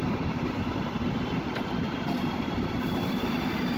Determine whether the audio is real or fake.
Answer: fake